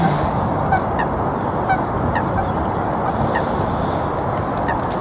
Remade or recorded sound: recorded